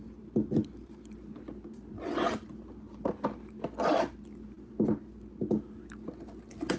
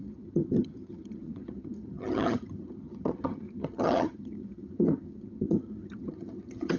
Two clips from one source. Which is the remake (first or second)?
second